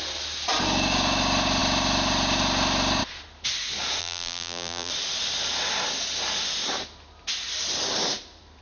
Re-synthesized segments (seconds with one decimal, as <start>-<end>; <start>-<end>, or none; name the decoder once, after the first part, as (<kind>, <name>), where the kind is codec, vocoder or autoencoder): 4.0-4.9 (vocoder, BigVGAN v2)